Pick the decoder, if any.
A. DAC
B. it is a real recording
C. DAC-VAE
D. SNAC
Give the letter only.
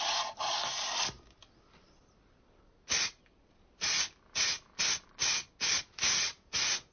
B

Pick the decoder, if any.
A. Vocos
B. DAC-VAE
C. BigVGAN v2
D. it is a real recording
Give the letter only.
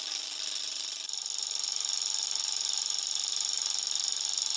D